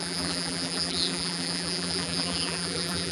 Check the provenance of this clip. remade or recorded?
remade